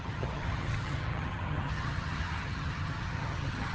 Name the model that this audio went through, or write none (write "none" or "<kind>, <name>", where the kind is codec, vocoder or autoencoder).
vocoder, HiFi-GAN